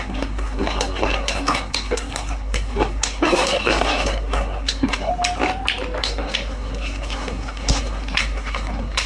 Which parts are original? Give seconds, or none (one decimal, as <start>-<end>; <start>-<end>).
5.1-6.0